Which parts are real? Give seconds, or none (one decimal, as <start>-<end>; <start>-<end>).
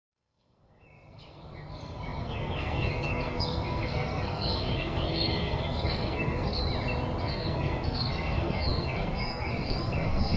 6.6-7.2